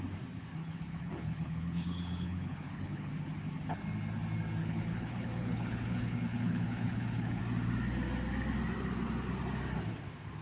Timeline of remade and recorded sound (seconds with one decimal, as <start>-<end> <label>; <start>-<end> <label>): 0.0-0.6 recorded; 0.6-3.1 remade; 3.1-4.6 recorded; 4.6-7.4 remade; 7.4-10.4 recorded